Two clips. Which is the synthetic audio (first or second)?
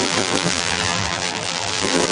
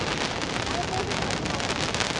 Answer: first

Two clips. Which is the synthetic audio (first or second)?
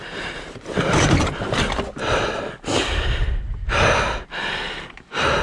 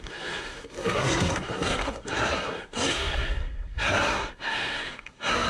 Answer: second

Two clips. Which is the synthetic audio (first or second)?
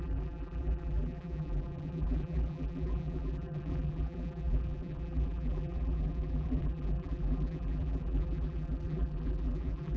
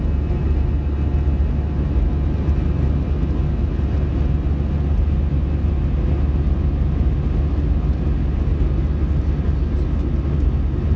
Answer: first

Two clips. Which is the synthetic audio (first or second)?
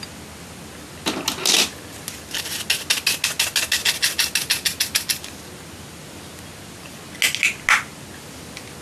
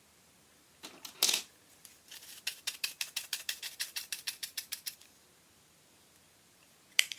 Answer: second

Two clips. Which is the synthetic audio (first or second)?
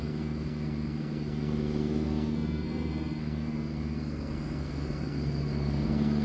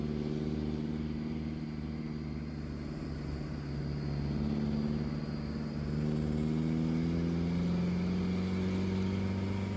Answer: first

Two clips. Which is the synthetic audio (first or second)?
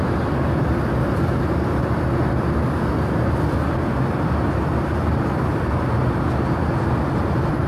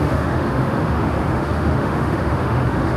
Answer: second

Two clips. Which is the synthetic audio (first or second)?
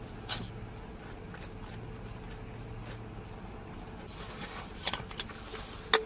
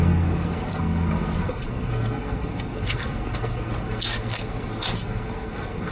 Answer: second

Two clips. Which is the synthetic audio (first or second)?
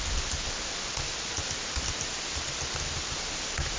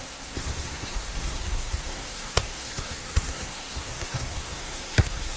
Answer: second